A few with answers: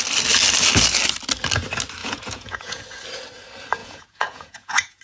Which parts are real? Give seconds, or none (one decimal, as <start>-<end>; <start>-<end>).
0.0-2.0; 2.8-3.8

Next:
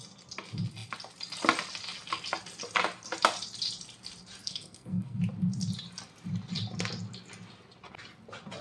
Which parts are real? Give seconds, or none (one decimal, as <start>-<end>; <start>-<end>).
0.0-4.4; 5.2-8.6

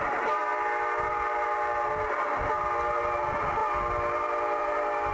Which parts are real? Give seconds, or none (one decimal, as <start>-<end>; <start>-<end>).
0.0-5.1

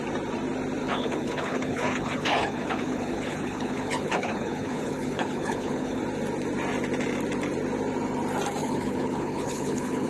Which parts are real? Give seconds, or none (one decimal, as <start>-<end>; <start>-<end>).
0.0-0.8; 6.0-8.6